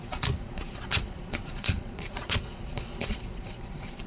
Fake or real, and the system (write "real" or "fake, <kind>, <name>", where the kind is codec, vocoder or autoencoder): fake, vocoder, Vocos